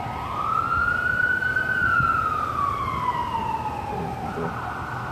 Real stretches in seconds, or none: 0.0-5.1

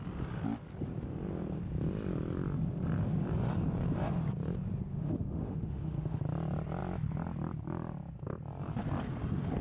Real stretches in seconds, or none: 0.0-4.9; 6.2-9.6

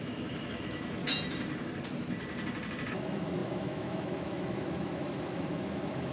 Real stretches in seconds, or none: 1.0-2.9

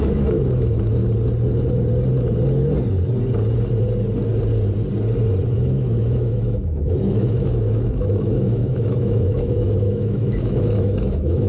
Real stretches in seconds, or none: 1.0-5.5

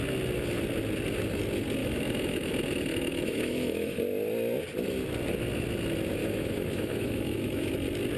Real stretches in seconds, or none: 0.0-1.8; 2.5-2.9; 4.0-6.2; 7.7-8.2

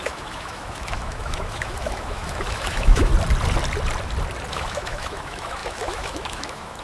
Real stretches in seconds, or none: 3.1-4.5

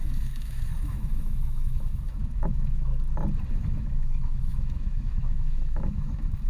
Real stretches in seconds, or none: 2.9-3.5